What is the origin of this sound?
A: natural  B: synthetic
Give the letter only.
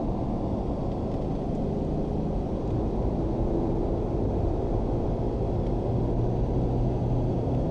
A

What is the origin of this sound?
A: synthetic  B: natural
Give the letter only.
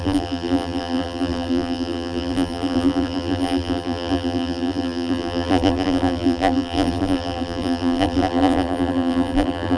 A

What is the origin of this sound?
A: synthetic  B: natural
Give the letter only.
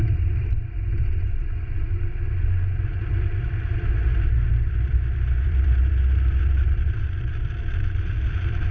A